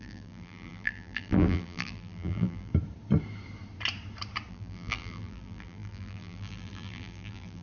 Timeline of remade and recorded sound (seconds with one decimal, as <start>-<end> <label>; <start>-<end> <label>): 0.0-2.7 remade; 2.7-4.5 recorded; 4.5-7.6 remade